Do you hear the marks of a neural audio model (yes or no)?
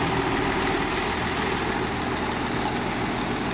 no